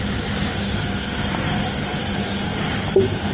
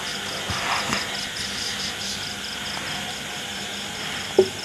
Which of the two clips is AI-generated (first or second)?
first